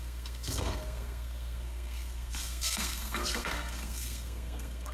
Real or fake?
fake